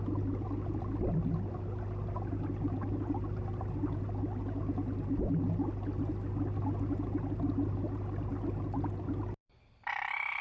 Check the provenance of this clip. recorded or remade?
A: recorded